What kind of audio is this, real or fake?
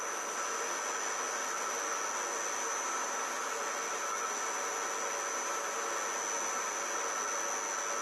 real